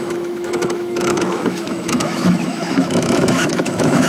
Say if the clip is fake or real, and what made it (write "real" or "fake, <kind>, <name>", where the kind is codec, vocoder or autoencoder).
fake, autoencoder, DAC-VAE